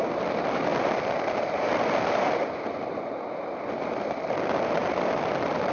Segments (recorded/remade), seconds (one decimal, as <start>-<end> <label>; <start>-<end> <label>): 0.0-0.7 remade; 0.7-4.1 recorded; 4.1-5.7 remade